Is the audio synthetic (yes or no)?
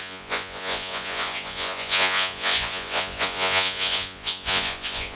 yes